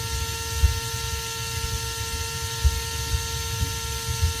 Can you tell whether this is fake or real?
real